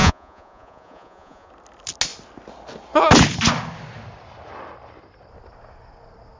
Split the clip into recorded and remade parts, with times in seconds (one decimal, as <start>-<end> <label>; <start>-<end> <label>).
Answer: 0.0-1.5 remade; 1.5-6.4 recorded

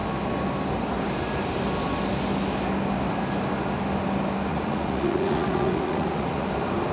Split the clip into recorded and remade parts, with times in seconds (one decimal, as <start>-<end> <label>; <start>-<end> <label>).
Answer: 0.0-4.5 recorded; 4.5-6.5 remade; 6.5-6.9 recorded

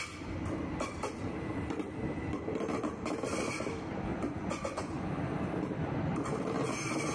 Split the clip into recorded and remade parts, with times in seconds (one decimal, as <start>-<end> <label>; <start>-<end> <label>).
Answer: 0.0-4.1 recorded; 4.1-5.1 remade; 5.1-7.1 recorded

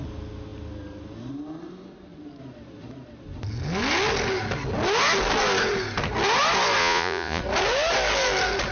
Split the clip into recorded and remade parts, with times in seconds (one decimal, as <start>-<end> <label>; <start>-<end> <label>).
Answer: 0.0-6.8 recorded; 6.8-7.4 remade; 7.4-8.7 recorded

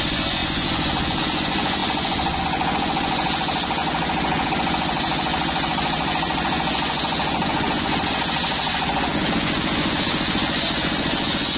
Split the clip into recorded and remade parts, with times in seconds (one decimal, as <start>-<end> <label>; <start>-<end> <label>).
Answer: 0.0-11.6 remade

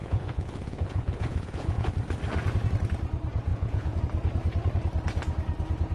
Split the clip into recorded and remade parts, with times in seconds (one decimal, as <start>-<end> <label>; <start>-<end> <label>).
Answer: 0.0-1.9 remade; 1.9-3.5 recorded; 3.5-4.0 remade; 4.0-5.9 recorded

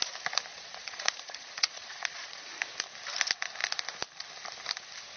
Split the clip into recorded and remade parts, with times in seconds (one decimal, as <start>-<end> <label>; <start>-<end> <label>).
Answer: 0.0-0.5 recorded; 0.5-2.5 remade; 2.5-5.2 recorded

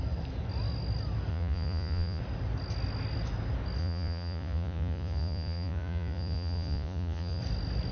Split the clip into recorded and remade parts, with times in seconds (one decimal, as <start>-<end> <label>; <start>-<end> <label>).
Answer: 0.0-1.3 recorded; 1.3-2.2 remade; 2.2-3.8 recorded; 3.8-7.4 remade; 7.4-7.9 recorded